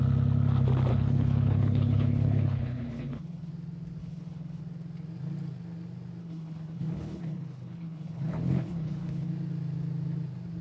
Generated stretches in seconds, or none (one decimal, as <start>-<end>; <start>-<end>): 0.9-3.5; 4.0-4.6; 6.2-9.3